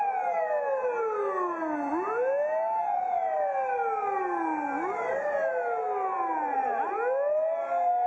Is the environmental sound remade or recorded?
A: recorded